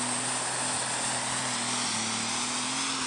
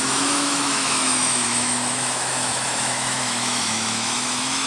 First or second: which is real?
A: first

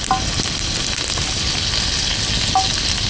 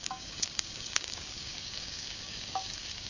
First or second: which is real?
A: first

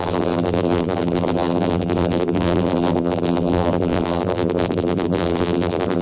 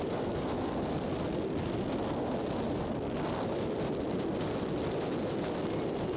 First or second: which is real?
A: second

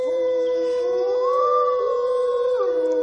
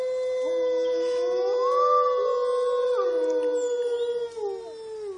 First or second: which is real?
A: second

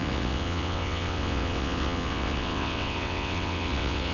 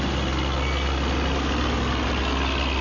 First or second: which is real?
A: second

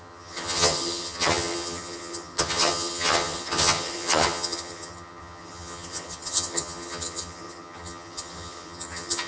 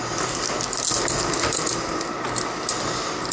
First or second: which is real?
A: second